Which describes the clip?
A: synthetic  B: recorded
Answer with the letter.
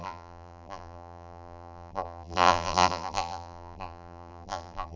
A